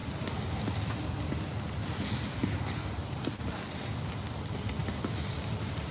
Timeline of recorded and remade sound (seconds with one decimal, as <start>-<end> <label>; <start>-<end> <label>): 0.0-2.4 recorded; 2.4-3.3 remade; 3.3-4.8 recorded; 4.8-5.9 remade